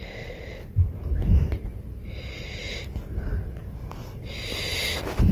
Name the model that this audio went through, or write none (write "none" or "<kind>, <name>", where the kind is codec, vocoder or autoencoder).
none